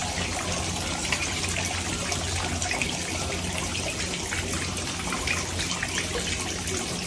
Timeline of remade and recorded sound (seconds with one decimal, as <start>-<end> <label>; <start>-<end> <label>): 0.0-7.1 recorded